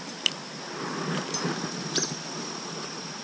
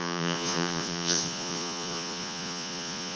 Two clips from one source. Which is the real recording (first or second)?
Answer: first